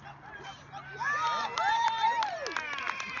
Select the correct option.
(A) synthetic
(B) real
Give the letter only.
B